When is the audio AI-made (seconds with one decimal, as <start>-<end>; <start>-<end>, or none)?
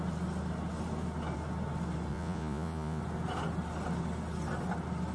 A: 2.1-3.0